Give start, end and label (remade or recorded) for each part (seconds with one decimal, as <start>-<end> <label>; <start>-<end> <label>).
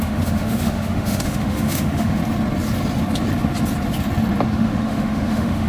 0.0-2.2 remade; 2.2-4.5 recorded; 4.5-5.7 remade